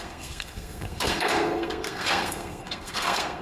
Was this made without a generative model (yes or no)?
no